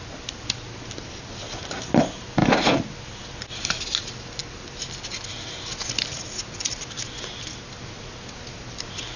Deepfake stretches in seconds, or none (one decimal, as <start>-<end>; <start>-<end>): 4.4-5.0

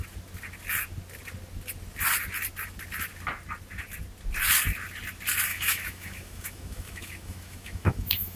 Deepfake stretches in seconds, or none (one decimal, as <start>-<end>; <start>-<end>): 5.5-8.4

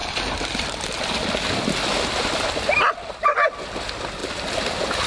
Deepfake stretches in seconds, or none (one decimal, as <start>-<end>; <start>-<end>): none